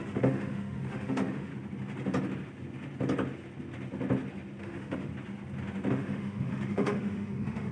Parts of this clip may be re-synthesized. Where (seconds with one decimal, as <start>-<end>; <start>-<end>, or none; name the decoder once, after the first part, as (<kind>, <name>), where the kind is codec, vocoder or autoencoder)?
0.0-1.5 (autoencoder, DAC-VAE); 4.6-5.1; 5.9-7.7